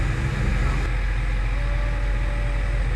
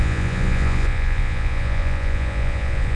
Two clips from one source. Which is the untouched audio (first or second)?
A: first